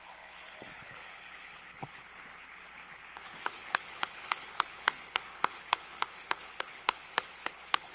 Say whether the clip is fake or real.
fake